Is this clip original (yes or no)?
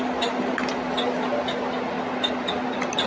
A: yes